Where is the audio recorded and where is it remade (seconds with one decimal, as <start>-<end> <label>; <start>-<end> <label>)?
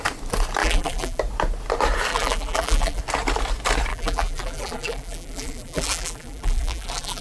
0.0-0.6 recorded; 0.6-1.2 remade; 1.2-2.1 recorded; 2.1-3.0 remade; 3.0-3.9 recorded; 3.9-7.2 remade